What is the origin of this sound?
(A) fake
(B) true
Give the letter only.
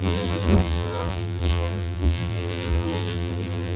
A